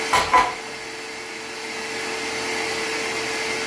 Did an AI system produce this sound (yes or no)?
no